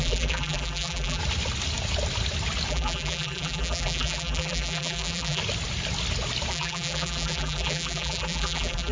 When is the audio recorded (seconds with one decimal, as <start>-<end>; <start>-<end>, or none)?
1.2-2.7; 5.4-6.5